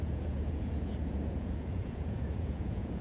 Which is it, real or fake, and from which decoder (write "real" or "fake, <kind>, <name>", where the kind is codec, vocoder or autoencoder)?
fake, vocoder, Vocos